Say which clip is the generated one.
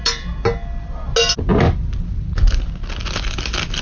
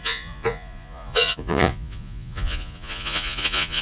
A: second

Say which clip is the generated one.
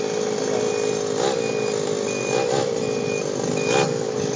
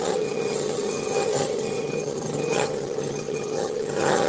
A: second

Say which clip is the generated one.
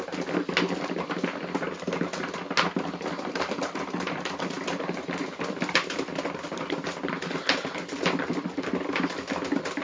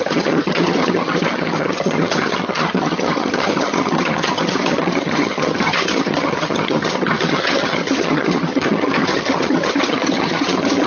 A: second